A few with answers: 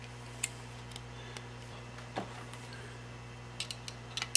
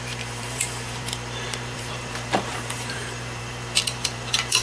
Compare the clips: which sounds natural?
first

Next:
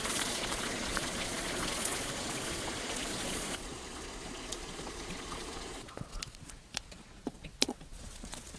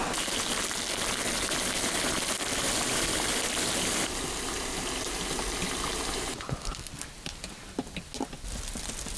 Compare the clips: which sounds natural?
second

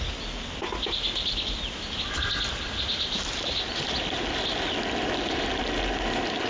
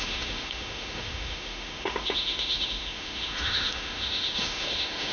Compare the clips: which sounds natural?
first